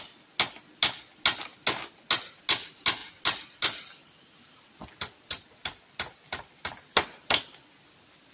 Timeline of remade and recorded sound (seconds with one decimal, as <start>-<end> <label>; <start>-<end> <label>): 0.0-8.3 recorded